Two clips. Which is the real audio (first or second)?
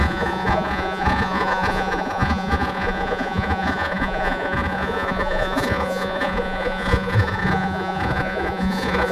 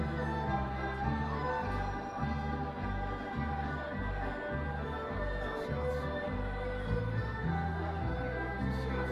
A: second